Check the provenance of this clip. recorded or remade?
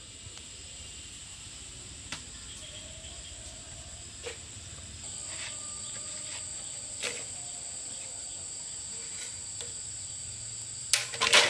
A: recorded